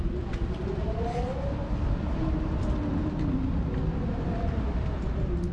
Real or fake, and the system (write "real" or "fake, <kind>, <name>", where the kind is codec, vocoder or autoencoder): real